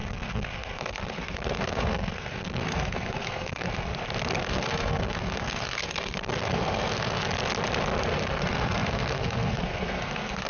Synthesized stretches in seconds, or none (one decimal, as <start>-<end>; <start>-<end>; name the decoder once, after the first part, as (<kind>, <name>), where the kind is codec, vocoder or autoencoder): 0.0-3.9 (codec, SNAC); 4.4-7.2; 8.1-10.5